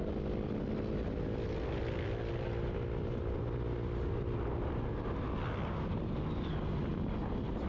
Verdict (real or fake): real